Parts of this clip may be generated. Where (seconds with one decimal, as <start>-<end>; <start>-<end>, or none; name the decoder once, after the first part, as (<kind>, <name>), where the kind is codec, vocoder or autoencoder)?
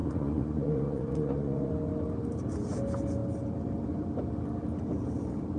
0.0-1.7 (vocoder, Vocos)